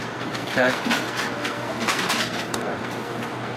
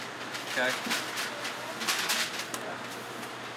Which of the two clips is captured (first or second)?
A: second